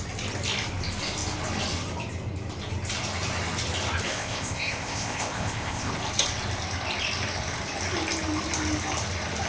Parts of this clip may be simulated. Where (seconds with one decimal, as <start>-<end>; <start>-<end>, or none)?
4.1-5.9